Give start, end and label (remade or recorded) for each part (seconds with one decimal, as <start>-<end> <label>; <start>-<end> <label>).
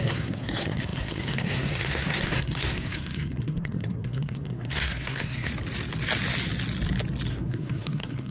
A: 0.0-5.5 remade; 5.5-7.3 recorded; 7.3-8.3 remade